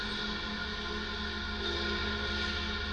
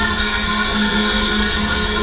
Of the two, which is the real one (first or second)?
first